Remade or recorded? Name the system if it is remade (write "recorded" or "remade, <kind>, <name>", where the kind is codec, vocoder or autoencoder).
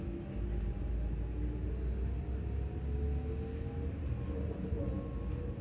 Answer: recorded